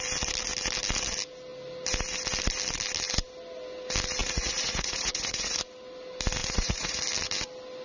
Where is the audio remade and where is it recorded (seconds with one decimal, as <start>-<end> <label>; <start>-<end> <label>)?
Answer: 0.0-4.2 recorded; 4.2-5.6 remade; 5.6-6.4 recorded; 6.4-7.0 remade; 7.0-7.8 recorded